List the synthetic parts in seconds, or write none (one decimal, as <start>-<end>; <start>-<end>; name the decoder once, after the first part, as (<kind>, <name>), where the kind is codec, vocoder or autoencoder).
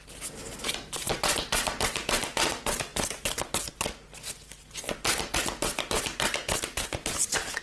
none